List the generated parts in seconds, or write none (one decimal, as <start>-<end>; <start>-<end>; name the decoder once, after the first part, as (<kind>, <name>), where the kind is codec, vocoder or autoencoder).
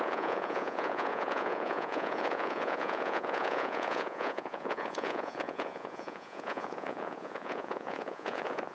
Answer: 0.0-8.7 (vocoder, Vocos)